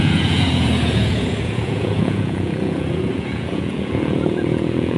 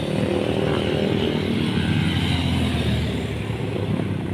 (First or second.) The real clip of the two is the second